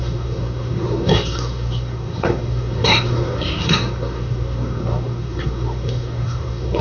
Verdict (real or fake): fake